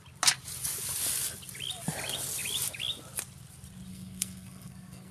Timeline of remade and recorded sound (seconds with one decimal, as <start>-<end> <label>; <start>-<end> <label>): 0.0-3.9 recorded; 3.9-5.1 remade